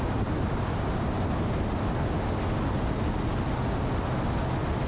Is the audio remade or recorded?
recorded